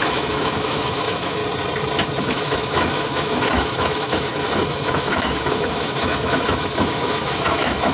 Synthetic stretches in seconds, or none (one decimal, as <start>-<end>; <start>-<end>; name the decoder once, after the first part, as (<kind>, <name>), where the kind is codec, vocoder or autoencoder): 0.0-1.4 (autoencoder, DAC-VAE); 2.2-7.9